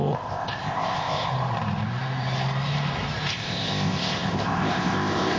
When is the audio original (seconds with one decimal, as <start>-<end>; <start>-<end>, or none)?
1.3-3.3